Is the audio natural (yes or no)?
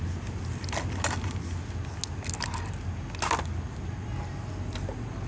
yes